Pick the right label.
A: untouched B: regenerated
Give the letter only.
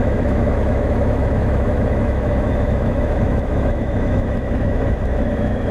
B